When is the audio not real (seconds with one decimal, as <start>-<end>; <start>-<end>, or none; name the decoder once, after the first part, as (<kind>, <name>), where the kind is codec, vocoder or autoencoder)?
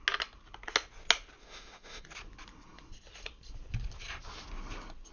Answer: 1.4-2.0 (autoencoder, DAC-VAE)